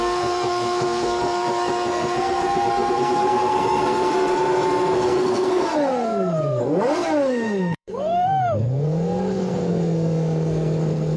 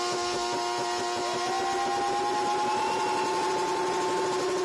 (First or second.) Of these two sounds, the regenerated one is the first